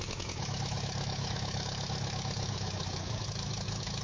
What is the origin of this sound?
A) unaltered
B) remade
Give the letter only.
B